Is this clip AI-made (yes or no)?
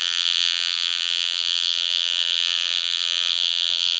yes